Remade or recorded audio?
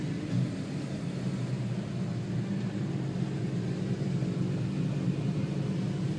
recorded